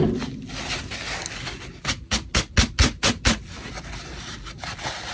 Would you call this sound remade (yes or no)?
no